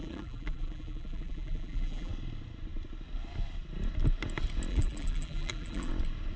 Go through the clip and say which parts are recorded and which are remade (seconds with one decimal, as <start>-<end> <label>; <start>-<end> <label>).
0.0-2.1 remade; 2.1-4.7 recorded; 4.7-5.9 remade; 5.9-6.4 recorded